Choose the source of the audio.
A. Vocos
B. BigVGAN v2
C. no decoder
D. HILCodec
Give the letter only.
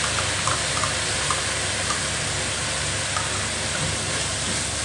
C